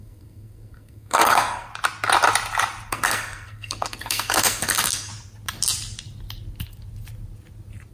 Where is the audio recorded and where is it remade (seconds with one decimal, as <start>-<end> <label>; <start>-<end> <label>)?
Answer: 0.0-1.7 remade; 1.7-2.9 recorded; 2.9-5.1 remade; 5.1-7.9 recorded